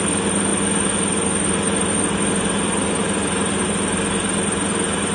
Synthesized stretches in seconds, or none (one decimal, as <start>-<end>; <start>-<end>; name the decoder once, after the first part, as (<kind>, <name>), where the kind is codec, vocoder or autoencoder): none

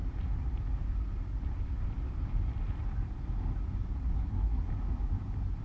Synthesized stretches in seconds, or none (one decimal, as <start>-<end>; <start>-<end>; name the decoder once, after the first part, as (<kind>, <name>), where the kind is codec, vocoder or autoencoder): 4.2-4.7 (codec, SNAC)

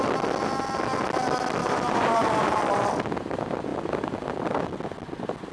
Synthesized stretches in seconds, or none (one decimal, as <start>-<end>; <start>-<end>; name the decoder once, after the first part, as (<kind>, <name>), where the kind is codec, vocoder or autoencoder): 1.6-2.6 (vocoder, BigVGAN v2)

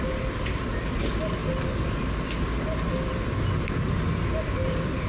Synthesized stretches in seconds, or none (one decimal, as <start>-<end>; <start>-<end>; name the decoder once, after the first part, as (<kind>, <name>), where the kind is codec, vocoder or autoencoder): none

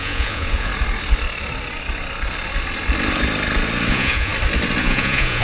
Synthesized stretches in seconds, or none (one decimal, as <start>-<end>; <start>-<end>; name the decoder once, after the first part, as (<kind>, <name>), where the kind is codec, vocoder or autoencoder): 0.0-0.7 (vocoder, Vocos); 3.9-4.3; 4.8-5.4

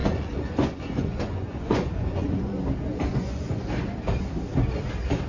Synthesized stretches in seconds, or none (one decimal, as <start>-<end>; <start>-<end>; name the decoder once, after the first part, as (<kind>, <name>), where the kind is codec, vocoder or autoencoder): 0.0-2.6 (vocoder, Vocos); 3.1-3.6